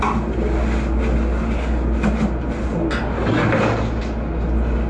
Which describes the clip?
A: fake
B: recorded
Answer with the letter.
B